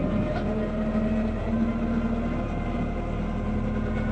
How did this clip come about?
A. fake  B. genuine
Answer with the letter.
B